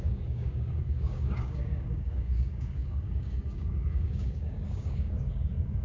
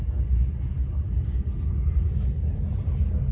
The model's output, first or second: first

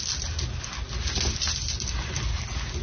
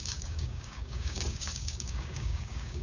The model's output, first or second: second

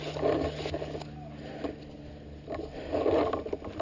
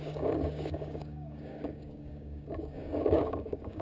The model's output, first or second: second